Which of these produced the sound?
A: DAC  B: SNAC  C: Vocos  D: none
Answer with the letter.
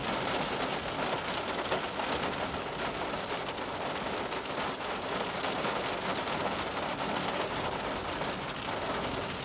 D